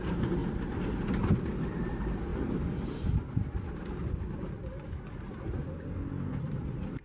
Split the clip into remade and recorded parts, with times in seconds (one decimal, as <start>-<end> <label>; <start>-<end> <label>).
0.0-0.4 remade; 0.4-1.6 recorded; 1.6-2.3 remade; 2.3-6.4 recorded; 6.4-7.0 remade